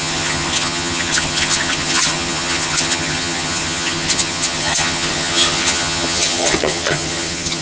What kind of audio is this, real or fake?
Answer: fake